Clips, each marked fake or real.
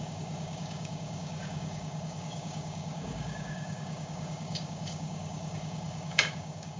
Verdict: fake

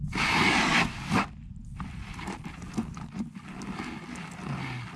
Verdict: real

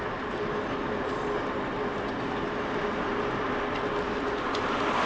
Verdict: real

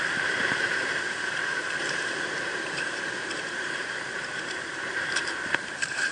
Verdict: fake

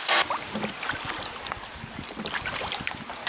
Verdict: real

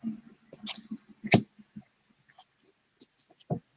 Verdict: real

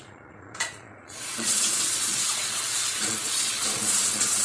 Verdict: fake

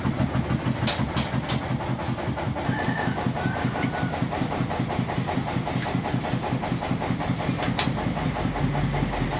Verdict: real